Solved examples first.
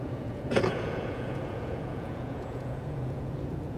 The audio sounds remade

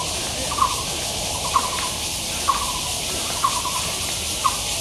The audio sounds recorded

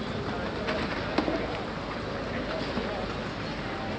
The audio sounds recorded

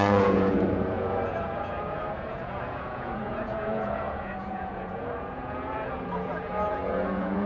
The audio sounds remade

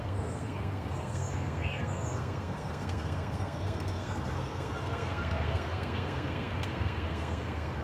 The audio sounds remade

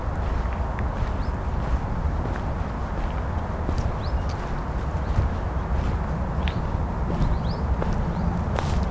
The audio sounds recorded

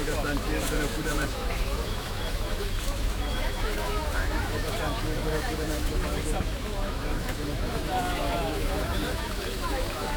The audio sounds remade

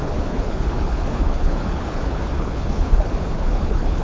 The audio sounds remade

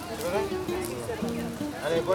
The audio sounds recorded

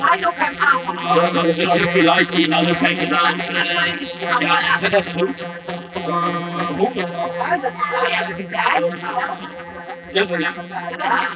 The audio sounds remade